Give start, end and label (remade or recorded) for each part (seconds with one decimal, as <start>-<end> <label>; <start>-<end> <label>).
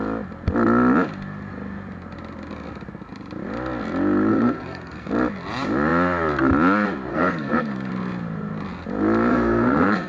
0.0-4.3 recorded; 4.3-5.1 remade; 5.1-7.1 recorded; 7.1-7.9 remade; 7.9-9.3 recorded; 9.3-10.1 remade